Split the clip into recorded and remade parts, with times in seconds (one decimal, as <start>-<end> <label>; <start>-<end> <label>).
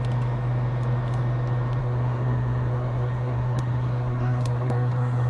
0.0-1.8 recorded; 1.8-5.3 remade